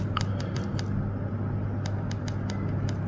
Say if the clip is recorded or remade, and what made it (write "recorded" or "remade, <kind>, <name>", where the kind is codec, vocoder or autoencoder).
recorded